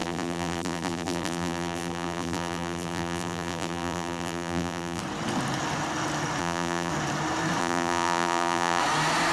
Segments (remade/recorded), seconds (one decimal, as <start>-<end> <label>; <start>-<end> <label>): 0.0-5.0 remade; 5.0-6.4 recorded; 6.4-6.9 remade; 6.9-7.6 recorded; 7.6-8.8 remade; 8.8-9.3 recorded